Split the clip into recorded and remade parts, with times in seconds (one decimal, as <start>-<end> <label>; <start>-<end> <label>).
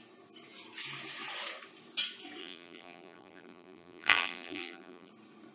0.0-2.4 recorded; 2.4-5.1 remade; 5.1-5.5 recorded